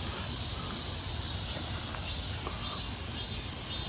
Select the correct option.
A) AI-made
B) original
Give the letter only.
B